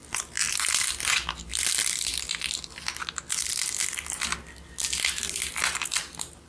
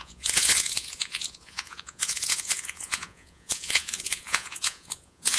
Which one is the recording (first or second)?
first